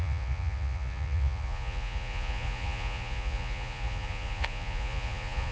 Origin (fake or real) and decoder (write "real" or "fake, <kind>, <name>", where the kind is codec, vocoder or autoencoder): fake, vocoder, Vocos